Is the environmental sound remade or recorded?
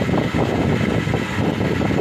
recorded